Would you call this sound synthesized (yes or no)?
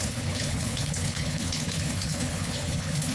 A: yes